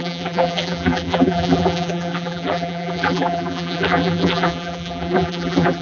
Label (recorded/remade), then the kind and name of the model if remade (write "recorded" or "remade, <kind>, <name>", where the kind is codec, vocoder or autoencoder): remade, vocoder, BigVGAN v2